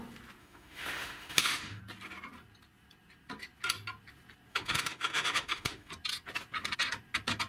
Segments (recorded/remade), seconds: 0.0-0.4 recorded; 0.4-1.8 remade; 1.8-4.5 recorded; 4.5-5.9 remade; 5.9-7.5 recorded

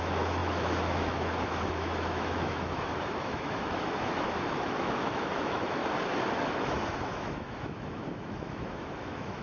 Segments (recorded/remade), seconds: 0.0-5.8 remade; 5.8-6.6 recorded; 6.6-9.4 remade

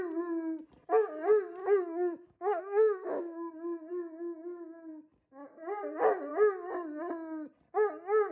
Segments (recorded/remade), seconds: 0.0-1.6 recorded; 1.6-3.5 remade; 3.5-8.3 recorded

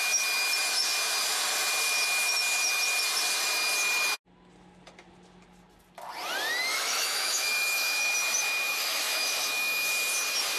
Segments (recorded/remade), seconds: 0.0-6.7 recorded; 6.7-8.1 remade; 8.1-8.7 recorded; 8.7-9.9 remade; 9.9-10.6 recorded

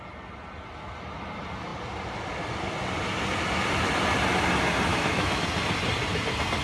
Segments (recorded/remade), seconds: 0.0-4.9 recorded; 4.9-5.4 remade; 5.4-6.6 recorded

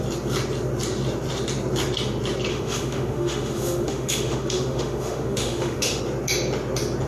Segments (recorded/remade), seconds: 0.0-2.5 recorded; 2.5-6.0 remade; 6.0-7.1 recorded

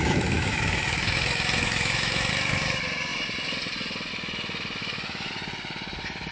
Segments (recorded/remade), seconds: 0.0-2.3 remade; 2.3-4.8 recorded; 4.8-5.3 remade; 5.3-6.3 recorded

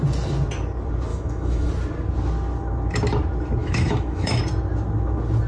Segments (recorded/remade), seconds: 0.0-1.1 recorded; 1.1-1.7 remade; 1.7-3.6 recorded; 3.6-4.4 remade; 4.4-5.5 recorded